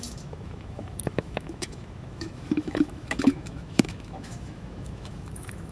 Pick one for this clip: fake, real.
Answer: fake